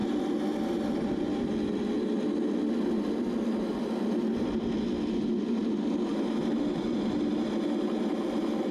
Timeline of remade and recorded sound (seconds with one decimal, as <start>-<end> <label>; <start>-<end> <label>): 0.0-5.6 recorded; 5.6-7.3 remade; 7.3-8.7 recorded